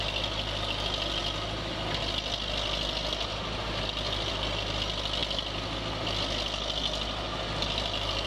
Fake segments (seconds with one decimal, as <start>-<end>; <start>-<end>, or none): none